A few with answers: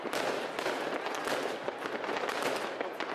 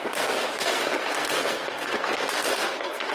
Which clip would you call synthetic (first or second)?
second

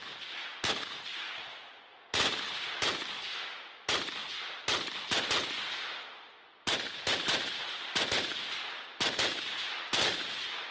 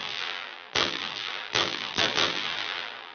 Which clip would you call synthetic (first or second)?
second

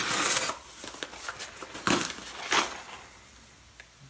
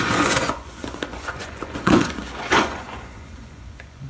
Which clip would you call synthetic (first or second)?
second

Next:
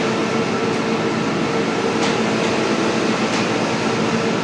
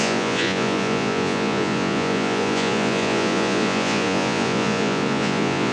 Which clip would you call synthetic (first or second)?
second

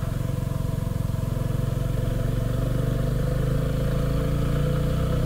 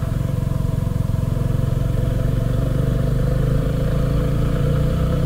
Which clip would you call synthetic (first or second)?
second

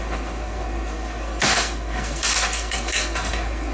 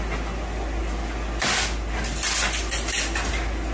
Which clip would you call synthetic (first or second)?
first